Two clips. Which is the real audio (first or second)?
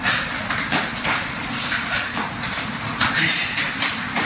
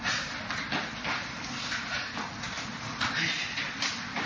second